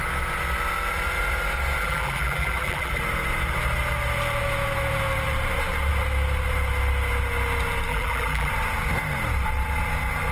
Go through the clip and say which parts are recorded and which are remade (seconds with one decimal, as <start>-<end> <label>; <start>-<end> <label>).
0.0-1.8 recorded; 1.8-3.0 remade; 3.0-7.9 recorded; 7.9-8.5 remade; 8.5-10.3 recorded